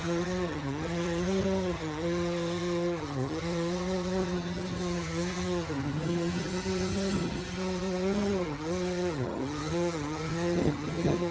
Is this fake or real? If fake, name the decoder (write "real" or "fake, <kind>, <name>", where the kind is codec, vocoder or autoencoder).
fake, vocoder, HiFi-GAN